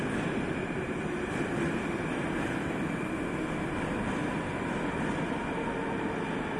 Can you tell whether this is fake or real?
real